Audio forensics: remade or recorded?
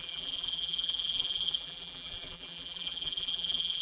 remade